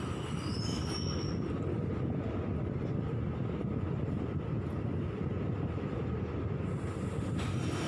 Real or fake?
real